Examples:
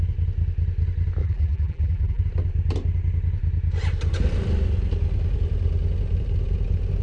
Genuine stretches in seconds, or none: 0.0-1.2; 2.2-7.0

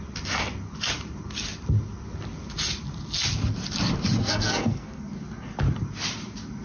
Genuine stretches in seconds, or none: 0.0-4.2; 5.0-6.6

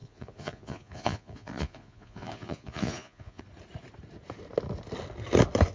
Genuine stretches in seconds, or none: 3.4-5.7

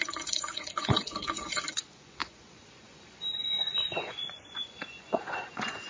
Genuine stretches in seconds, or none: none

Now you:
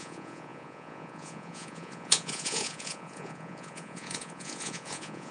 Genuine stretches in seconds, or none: none

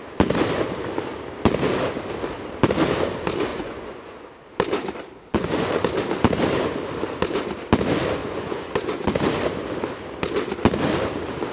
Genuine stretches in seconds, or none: 0.0-3.5; 4.3-5.3; 5.8-8.2; 9.1-11.5